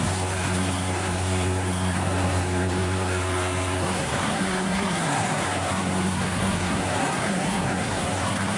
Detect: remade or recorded remade